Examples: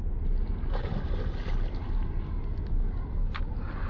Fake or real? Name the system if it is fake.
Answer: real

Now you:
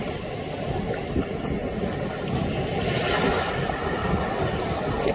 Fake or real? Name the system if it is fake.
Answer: real